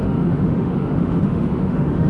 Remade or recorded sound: remade